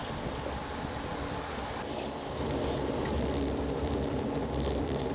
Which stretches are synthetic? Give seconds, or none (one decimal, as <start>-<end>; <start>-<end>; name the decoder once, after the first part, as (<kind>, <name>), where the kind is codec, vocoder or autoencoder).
none